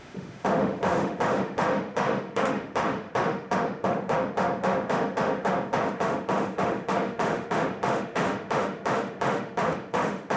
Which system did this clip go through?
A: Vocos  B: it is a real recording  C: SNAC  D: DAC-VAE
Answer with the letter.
D